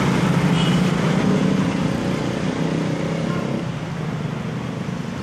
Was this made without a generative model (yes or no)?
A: yes